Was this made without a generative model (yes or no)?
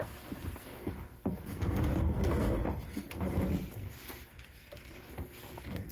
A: no